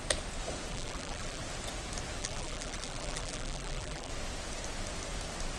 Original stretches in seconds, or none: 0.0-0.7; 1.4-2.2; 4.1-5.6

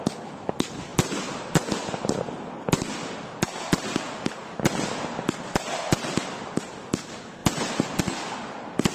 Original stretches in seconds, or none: 0.0-7.4; 8.0-8.9

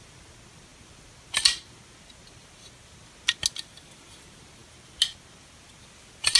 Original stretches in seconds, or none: 0.0-6.4

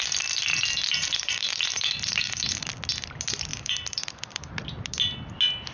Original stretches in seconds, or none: 0.0-1.0; 2.4-3.5; 4.5-5.7

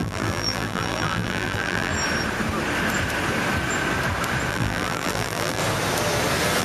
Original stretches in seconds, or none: 1.9-4.5; 5.6-6.6

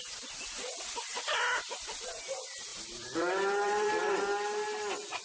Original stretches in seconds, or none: 0.0-1.1; 2.1-2.7; 4.0-5.2